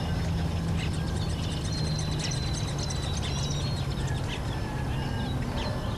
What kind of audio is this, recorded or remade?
recorded